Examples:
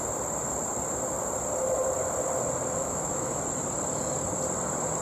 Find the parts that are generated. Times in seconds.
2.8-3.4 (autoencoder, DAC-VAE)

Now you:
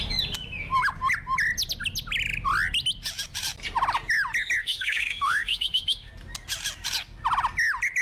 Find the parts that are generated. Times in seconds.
4.6-6.1 (autoencoder, DAC-VAE)

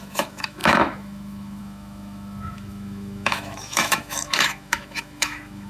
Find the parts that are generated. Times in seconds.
0.0-5.7 (autoencoder, DAC-VAE)